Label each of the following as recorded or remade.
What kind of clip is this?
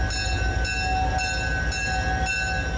recorded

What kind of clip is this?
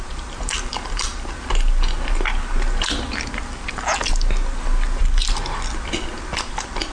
recorded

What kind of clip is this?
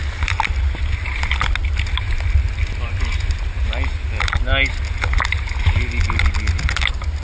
recorded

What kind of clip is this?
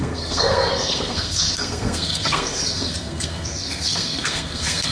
remade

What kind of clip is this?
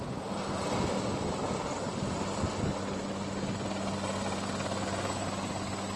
recorded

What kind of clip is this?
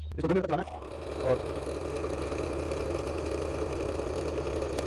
recorded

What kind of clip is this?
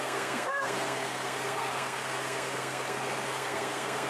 remade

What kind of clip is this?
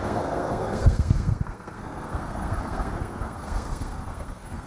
remade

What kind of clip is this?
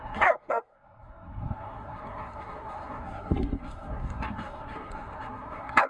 remade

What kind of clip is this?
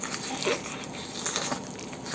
recorded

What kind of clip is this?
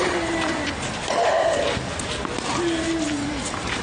recorded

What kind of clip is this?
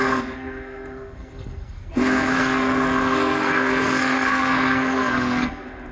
remade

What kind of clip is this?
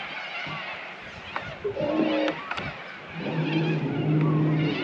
recorded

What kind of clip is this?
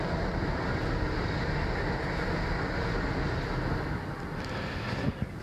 recorded